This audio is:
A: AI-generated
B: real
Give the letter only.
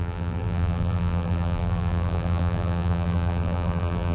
A